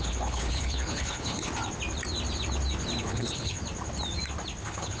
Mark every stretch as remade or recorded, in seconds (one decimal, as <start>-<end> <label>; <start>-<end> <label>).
0.0-1.5 remade; 1.5-3.0 recorded; 3.0-3.6 remade; 3.6-4.6 recorded; 4.6-5.0 remade